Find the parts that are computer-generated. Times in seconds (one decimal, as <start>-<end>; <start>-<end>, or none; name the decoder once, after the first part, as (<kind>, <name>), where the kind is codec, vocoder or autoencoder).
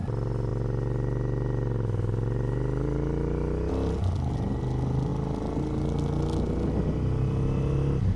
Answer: none